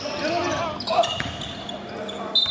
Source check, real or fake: real